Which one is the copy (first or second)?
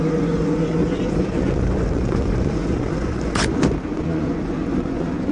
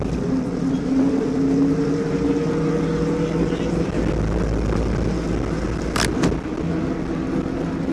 first